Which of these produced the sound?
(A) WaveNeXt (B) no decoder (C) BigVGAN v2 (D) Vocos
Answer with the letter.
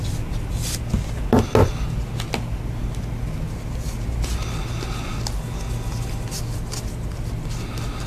B